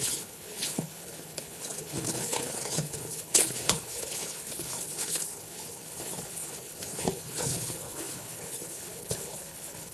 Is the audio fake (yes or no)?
yes